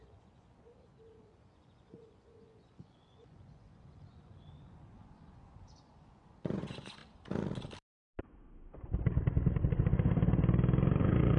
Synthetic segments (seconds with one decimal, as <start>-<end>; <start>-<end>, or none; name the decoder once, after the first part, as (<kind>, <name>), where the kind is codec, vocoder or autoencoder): 0.0-7.0 (vocoder, Vocos); 11.0-11.4